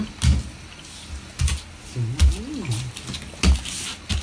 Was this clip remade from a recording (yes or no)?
no